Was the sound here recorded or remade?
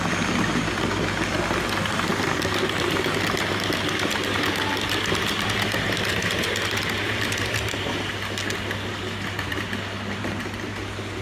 recorded